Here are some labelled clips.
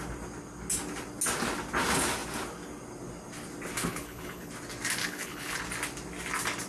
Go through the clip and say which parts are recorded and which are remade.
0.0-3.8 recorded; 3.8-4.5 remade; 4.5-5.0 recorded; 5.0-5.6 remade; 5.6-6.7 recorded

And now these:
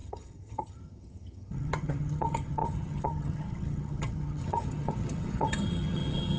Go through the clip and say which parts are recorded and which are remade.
0.0-6.4 remade

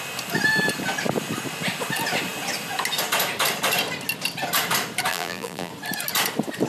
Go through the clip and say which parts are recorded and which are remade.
0.0-5.1 recorded; 5.1-5.7 remade; 5.7-6.7 recorded

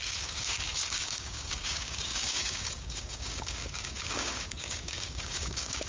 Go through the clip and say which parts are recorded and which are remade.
0.0-5.9 remade